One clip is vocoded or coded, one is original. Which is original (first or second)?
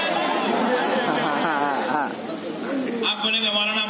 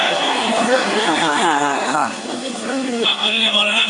first